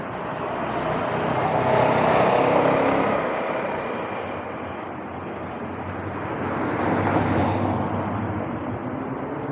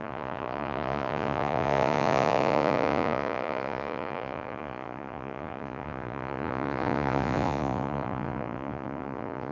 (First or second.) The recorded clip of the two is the first